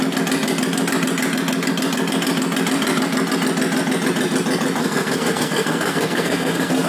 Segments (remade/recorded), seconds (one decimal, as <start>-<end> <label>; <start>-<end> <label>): 0.0-4.8 recorded; 4.8-6.9 remade

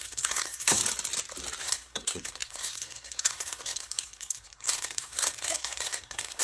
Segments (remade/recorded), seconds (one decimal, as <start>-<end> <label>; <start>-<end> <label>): 0.0-0.8 remade; 0.8-1.6 recorded; 1.6-6.4 remade

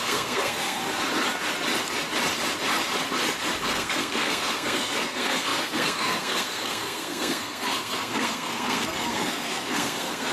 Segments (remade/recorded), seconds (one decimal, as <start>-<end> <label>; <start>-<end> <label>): 0.0-0.8 remade; 0.8-3.6 recorded; 3.6-10.3 remade

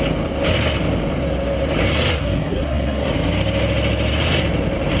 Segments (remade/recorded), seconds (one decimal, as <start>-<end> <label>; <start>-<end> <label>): 0.0-2.1 recorded; 2.1-3.1 remade; 3.1-5.0 recorded

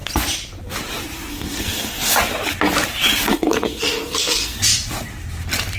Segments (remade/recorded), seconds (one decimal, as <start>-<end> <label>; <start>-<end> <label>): 0.0-1.3 recorded; 1.3-2.1 remade; 2.1-3.3 recorded; 3.3-4.6 remade; 4.6-5.8 recorded

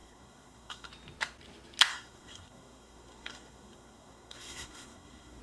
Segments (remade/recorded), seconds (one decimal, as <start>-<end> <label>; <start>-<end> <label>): 0.0-0.9 remade; 0.9-1.9 recorded; 1.9-5.4 remade

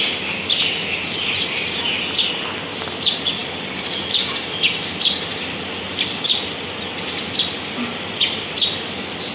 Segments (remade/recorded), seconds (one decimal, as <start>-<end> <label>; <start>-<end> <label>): 0.0-9.3 recorded

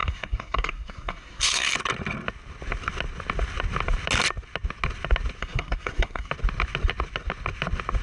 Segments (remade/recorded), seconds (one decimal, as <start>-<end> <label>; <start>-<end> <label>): 0.0-1.7 remade; 1.7-5.4 recorded; 5.4-6.3 remade; 6.3-8.0 recorded